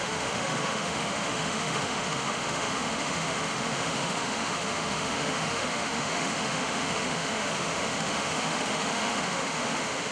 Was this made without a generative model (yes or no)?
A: no